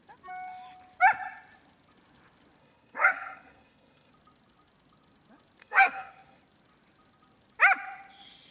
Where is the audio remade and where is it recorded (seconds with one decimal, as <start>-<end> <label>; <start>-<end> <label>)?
0.0-2.6 recorded; 2.6-4.1 remade; 4.1-5.6 recorded; 5.6-6.4 remade; 6.4-8.5 recorded